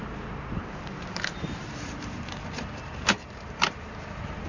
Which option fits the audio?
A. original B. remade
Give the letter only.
B